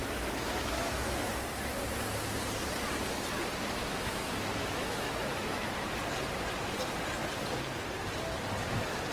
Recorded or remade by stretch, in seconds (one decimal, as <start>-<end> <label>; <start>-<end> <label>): 0.0-1.3 remade; 1.3-3.8 recorded; 3.8-5.9 remade; 5.9-9.1 recorded